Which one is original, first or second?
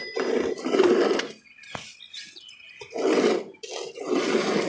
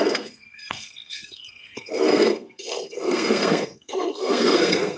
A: first